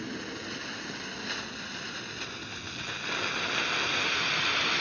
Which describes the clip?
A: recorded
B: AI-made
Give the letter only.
A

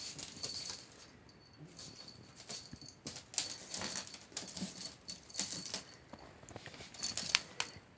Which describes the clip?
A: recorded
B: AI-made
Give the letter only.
A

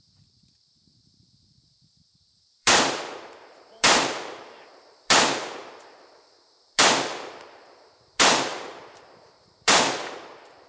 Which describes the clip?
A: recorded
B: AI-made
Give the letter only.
B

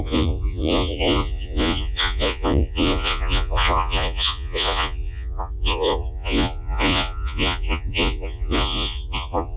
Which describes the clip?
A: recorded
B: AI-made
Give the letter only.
B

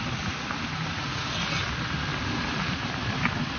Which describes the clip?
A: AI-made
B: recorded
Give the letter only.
B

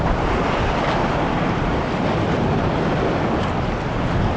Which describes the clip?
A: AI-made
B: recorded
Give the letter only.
B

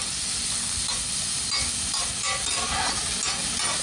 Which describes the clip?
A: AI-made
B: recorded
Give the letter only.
B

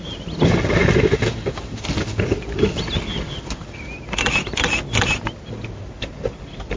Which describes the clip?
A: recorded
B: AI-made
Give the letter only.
A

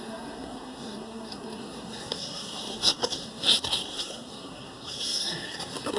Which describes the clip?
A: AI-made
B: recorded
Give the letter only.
A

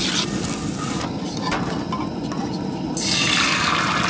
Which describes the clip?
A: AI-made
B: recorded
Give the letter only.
B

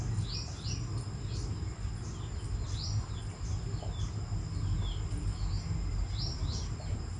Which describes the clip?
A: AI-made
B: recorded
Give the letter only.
B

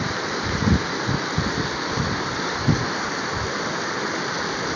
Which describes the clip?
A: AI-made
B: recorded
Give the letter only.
B